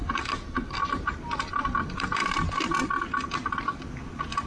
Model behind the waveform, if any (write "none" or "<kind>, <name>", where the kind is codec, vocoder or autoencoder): none